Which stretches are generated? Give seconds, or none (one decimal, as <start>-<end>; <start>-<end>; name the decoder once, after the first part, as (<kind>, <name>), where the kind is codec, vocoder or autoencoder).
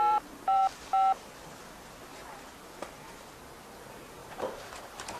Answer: 0.0-0.6 (vocoder, BigVGAN v2); 3.7-5.2